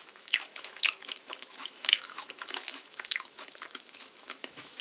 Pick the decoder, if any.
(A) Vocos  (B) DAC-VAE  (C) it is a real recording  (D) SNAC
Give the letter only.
B